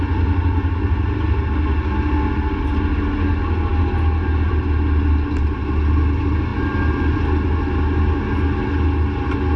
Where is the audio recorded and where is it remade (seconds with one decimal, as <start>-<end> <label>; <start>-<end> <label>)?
0.0-9.6 recorded